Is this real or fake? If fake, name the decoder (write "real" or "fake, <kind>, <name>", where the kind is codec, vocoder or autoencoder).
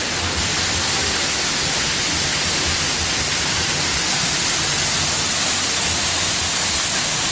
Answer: real